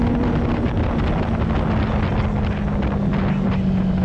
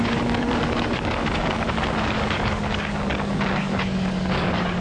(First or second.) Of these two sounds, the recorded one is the first